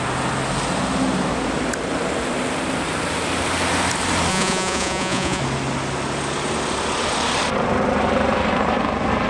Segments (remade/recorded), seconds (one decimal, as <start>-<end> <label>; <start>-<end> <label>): 0.0-4.3 recorded; 4.3-5.4 remade; 5.4-9.3 recorded